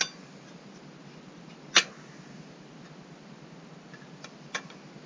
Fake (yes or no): no